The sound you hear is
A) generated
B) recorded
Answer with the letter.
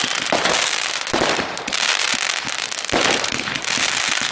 A